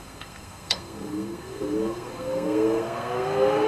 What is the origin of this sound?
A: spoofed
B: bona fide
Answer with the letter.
A